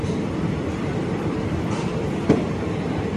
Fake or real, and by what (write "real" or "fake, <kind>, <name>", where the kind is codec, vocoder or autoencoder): fake, vocoder, BigVGAN v2